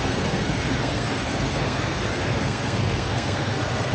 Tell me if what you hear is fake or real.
fake